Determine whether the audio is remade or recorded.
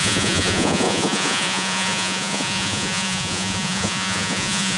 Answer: remade